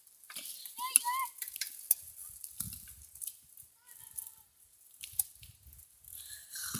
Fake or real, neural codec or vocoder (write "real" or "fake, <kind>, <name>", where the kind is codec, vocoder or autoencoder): real